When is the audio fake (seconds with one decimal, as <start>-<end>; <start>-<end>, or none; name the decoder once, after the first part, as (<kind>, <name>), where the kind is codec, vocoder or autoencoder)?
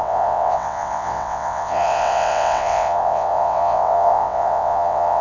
0.0-5.2 (vocoder, WaveNeXt)